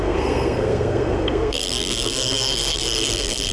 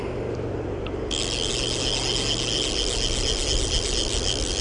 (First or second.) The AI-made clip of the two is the first